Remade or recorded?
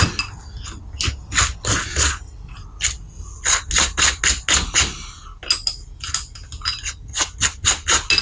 recorded